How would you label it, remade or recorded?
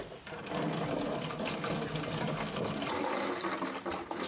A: recorded